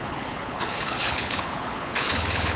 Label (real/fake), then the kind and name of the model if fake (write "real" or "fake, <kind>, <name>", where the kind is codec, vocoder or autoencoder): fake, codec, HILCodec